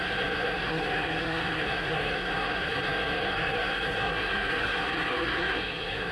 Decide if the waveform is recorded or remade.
remade